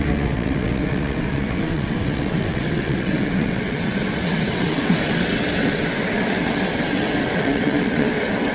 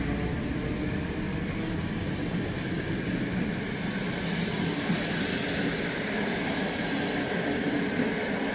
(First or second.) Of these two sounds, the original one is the second